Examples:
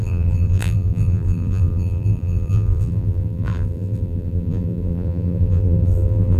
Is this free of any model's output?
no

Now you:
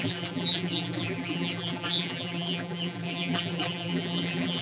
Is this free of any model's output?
no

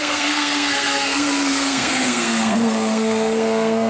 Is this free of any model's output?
no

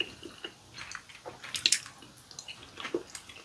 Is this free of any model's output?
yes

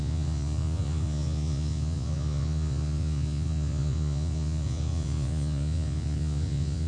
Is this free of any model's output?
no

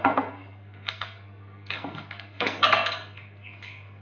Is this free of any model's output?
no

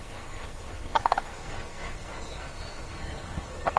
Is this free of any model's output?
no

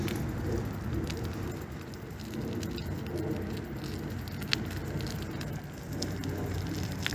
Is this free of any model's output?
yes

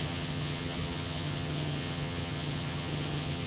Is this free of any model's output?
no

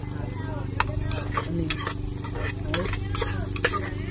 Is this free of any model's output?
yes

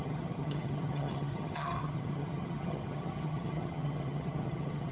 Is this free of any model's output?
no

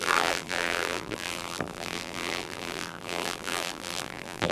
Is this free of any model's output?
no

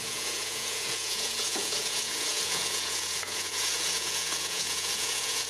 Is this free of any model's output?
no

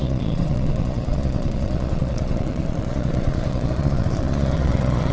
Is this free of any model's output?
no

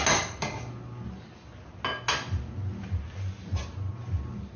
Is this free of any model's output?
yes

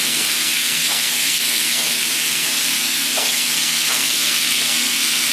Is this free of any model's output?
no